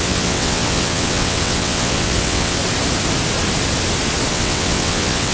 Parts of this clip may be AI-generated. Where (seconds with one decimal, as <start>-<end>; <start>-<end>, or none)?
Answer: 0.0-2.6; 4.3-5.3